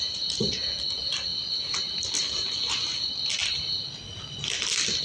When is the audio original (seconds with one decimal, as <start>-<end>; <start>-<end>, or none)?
0.0-5.0